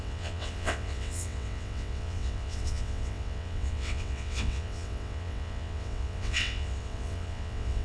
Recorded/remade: remade